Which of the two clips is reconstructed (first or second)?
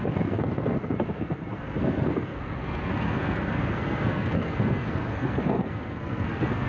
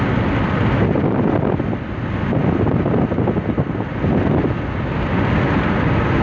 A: first